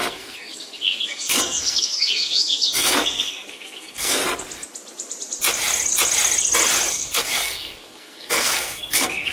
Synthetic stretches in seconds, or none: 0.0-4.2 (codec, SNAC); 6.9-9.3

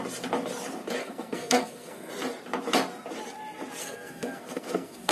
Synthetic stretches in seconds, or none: 1.0-2.1 (codec, SNAC); 3.8-5.1

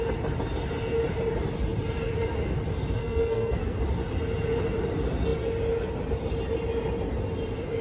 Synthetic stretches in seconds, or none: 3.0-3.8 (codec, SNAC)

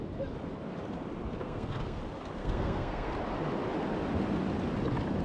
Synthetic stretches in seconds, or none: 1.4-2.0 (codec, SNAC); 2.4-3.1

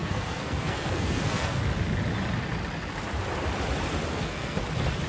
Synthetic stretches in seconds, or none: 0.0-1.6 (codec, SNAC); 4.1-4.6

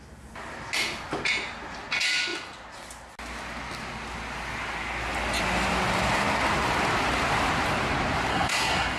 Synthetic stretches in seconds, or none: 8.3-9.0 (codec, SNAC)

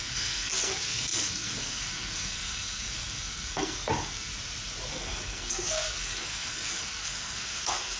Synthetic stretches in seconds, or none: 0.0-4.3 (codec, SNAC); 4.9-8.0